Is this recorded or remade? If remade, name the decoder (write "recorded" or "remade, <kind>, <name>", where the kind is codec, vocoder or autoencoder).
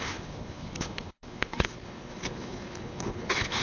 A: remade, codec, HILCodec